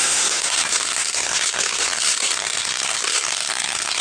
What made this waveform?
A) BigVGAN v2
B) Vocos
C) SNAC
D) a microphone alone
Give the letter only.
C